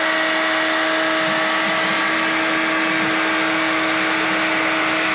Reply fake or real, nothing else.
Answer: real